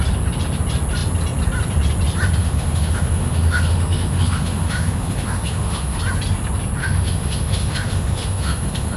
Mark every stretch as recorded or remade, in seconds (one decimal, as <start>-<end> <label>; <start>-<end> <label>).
0.0-2.4 recorded; 2.4-6.0 remade; 6.0-6.8 recorded; 6.8-9.0 remade